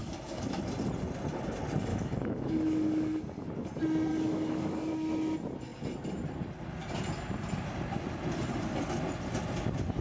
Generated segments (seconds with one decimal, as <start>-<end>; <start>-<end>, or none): 0.0-0.6; 1.9-3.2; 4.1-4.9